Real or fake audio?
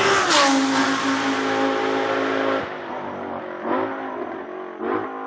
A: real